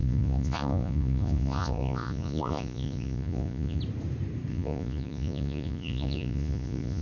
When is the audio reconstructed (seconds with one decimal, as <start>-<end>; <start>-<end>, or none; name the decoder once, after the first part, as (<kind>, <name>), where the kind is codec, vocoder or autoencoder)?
0.0-3.8 (vocoder, Vocos); 4.5-7.0